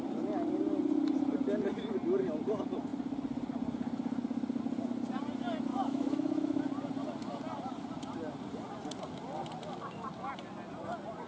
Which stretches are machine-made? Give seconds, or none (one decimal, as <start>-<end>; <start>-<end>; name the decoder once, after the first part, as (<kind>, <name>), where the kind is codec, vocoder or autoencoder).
5.7-6.6 (autoencoder, DAC-VAE)